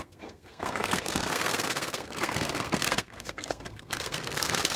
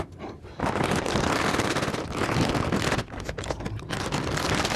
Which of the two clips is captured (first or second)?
second